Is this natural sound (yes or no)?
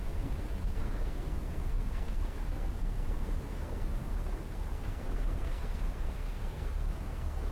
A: no